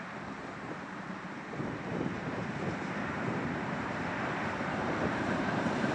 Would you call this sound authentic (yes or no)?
no